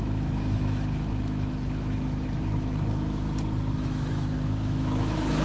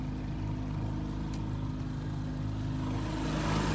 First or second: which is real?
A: second